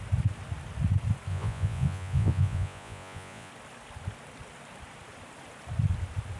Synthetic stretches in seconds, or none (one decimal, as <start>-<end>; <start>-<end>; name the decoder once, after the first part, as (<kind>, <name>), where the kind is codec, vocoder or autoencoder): 1.3-3.5 (vocoder, Vocos)